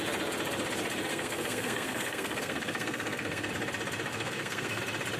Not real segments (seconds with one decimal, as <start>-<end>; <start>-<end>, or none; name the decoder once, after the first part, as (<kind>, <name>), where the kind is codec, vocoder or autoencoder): 1.1-3.5 (codec, SNAC); 4.1-4.8